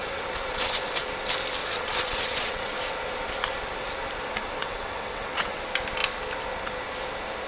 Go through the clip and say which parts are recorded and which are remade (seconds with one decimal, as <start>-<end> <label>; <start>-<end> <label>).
0.0-1.0 remade; 1.0-1.6 recorded; 1.6-2.7 remade; 2.7-4.6 recorded; 4.6-5.6 remade; 5.6-7.5 recorded